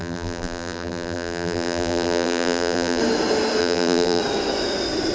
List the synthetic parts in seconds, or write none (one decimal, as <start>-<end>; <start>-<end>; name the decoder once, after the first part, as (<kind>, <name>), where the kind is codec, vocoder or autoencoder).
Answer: 0.0-3.0 (vocoder, BigVGAN v2); 3.6-4.2

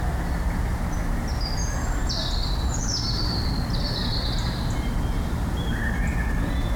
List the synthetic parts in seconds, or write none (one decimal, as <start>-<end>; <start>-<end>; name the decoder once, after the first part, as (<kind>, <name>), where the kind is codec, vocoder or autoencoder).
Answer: 2.8-3.6 (vocoder, BigVGAN v2)

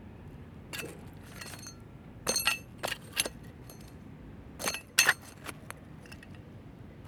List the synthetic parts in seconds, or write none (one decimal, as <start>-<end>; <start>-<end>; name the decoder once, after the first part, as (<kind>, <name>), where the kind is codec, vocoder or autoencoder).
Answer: 0.9-2.2 (vocoder, BigVGAN v2)

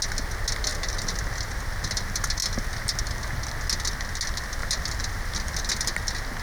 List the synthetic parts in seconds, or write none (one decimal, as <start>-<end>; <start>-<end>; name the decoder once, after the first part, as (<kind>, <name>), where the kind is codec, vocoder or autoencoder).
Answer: 0.7-1.8 (vocoder, BigVGAN v2); 4.6-5.7

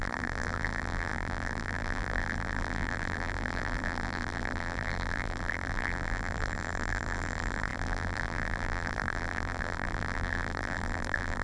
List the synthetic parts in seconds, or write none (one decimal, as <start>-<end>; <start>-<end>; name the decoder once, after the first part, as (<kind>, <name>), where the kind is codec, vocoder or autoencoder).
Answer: 0.0-11.4 (vocoder, BigVGAN v2)

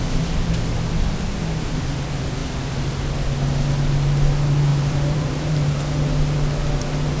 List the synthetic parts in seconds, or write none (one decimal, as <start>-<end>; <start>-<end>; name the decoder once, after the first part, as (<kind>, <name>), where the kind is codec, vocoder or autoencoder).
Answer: 4.7-5.8 (vocoder, BigVGAN v2)

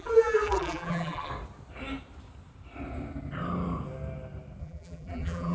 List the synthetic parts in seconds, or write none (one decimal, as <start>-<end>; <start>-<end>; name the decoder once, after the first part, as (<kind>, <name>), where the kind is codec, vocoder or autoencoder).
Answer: 0.0-1.3 (vocoder, BigVGAN v2); 4.6-5.5

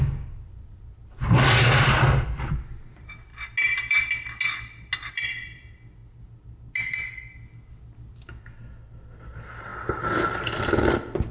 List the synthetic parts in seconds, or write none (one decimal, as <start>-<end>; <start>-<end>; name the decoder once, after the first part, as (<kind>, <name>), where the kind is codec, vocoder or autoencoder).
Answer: 0.0-3.3 (vocoder, BigVGAN v2); 5.1-6.0; 9.2-9.7; 10.4-11.3